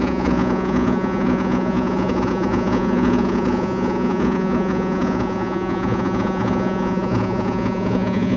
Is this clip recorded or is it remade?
remade